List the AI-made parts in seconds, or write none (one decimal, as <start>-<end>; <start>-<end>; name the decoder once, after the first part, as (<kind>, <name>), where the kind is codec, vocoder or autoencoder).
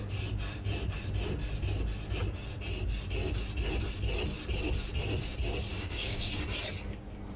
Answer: 5.7-6.3 (codec, DAC)